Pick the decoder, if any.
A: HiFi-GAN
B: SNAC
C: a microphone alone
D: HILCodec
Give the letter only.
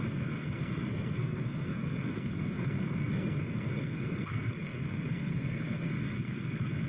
B